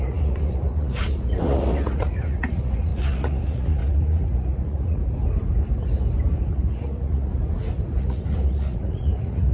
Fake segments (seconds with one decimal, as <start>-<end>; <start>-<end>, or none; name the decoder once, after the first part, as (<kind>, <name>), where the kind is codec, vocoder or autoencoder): 0.0-5.0 (vocoder, Vocos); 6.5-7.3; 8.0-9.5